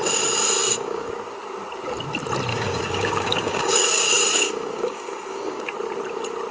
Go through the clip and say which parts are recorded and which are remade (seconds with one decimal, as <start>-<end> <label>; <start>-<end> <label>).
0.0-0.6 recorded; 0.6-1.1 remade; 1.1-2.5 recorded; 2.5-5.6 remade; 5.6-6.5 recorded

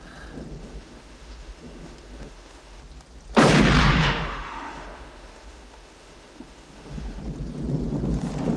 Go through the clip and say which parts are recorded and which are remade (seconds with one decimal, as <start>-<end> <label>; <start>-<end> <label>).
0.0-0.6 recorded; 0.6-2.8 remade; 2.8-3.8 recorded; 3.8-7.2 remade; 7.2-8.6 recorded

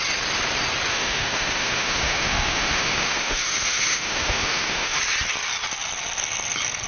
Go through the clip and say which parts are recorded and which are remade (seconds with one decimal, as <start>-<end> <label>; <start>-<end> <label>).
0.0-0.9 recorded; 0.9-5.0 remade; 5.0-6.9 recorded

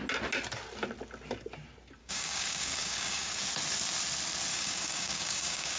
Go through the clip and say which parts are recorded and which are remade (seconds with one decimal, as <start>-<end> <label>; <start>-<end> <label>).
0.0-2.0 recorded; 2.0-3.4 remade; 3.4-4.5 recorded; 4.5-5.8 remade